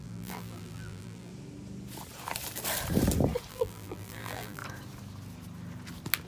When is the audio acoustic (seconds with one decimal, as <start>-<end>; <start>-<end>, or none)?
1.3-3.5; 4.6-6.3